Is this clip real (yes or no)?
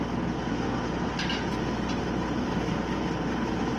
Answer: yes